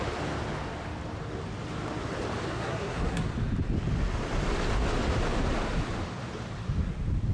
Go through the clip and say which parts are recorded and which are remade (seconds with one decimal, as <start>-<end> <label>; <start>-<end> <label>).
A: 0.0-2.5 recorded; 2.5-3.3 remade; 3.3-7.3 recorded